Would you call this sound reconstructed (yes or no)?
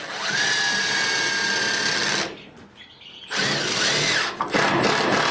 no